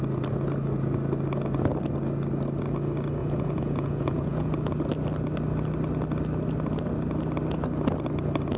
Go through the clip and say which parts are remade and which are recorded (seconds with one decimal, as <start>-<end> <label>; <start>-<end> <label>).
0.0-3.2 recorded; 3.2-4.5 remade; 4.5-8.6 recorded